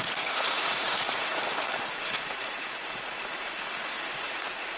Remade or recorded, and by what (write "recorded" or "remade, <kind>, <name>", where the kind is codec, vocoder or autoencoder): remade, vocoder, Vocos